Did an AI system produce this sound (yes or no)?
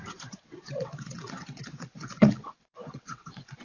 yes